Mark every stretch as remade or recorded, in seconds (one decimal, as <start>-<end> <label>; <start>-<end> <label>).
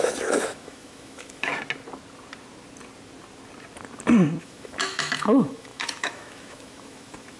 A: 0.0-1.5 remade; 1.5-4.4 recorded; 4.4-7.4 remade